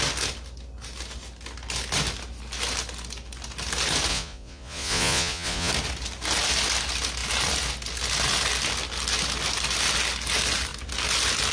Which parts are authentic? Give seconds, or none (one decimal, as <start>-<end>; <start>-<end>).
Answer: 0.0-4.1; 5.7-11.5

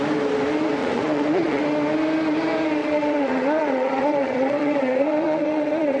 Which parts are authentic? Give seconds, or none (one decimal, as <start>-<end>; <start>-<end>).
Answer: 0.0-0.8; 1.6-2.8

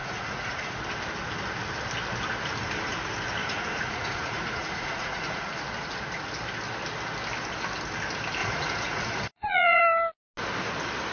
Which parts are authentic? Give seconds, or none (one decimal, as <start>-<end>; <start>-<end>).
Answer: 0.8-3.4; 5.6-8.4; 9.8-11.1

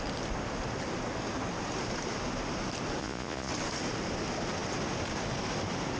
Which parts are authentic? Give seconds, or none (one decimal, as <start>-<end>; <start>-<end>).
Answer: 0.0-3.0; 3.5-6.0

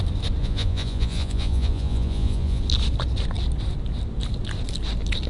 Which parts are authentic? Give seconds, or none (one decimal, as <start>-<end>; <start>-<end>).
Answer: 0.0-0.4; 2.6-5.3

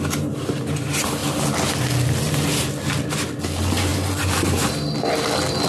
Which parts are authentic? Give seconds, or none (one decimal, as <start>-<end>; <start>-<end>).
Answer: 0.0-5.7

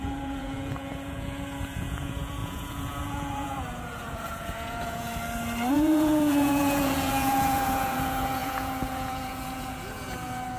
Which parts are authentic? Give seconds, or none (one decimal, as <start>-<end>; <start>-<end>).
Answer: 5.1-5.7

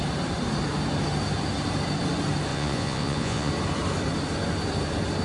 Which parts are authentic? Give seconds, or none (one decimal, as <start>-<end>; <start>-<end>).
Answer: 0.0-2.5; 3.5-5.2